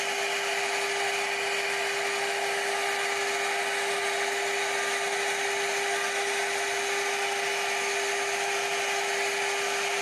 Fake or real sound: real